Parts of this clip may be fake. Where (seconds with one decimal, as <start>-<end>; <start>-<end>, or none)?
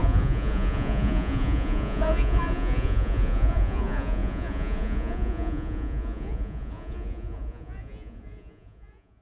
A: 0.0-9.2